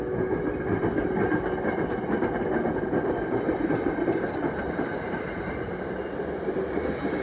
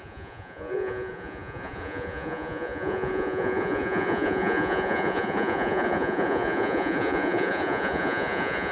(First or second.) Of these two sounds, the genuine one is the first